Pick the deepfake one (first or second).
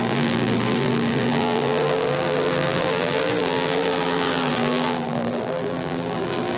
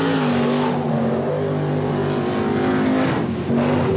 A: first